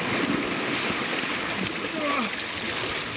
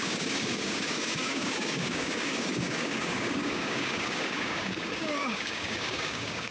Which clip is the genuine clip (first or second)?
first